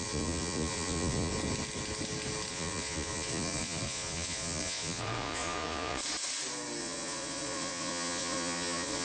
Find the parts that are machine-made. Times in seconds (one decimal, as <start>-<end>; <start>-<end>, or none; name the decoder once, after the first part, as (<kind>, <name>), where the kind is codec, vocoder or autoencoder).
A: 0.0-1.3 (vocoder, Vocos); 2.5-6.0; 6.8-9.0